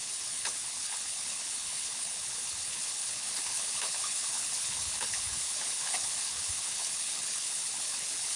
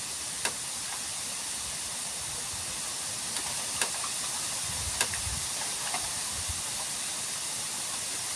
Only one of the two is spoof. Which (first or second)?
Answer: first